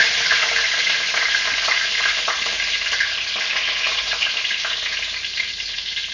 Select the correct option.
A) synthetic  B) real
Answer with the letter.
B